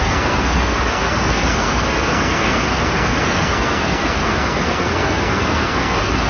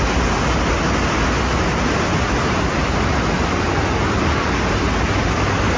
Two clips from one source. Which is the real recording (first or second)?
second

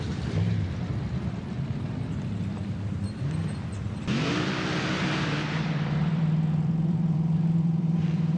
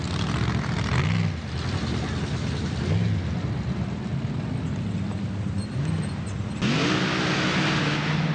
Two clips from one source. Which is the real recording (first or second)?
second